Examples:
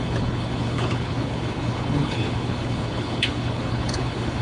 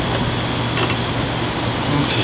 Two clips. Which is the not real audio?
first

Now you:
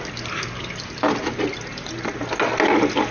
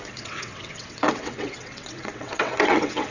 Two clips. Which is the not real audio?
second